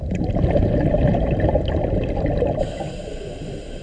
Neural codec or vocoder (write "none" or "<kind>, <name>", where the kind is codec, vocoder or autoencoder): none